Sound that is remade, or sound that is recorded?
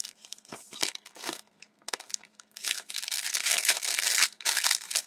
remade